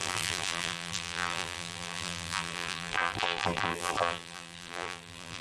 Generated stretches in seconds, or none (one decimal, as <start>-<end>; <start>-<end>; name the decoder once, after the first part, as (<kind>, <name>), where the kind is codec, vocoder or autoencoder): 0.0-5.4 (vocoder, BigVGAN v2)